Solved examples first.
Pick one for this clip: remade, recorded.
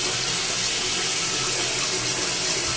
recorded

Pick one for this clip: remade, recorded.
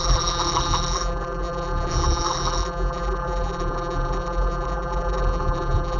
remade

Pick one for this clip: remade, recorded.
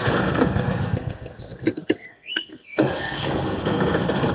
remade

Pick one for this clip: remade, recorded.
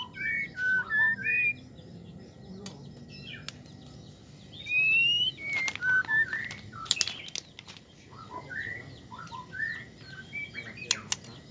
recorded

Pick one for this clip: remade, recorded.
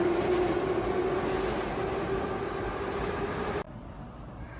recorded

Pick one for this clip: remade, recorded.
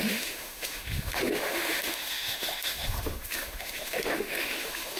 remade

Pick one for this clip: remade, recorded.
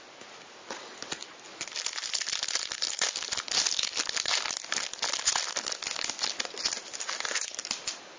recorded